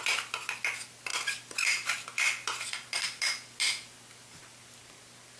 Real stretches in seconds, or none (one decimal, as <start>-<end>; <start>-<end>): 0.0-5.4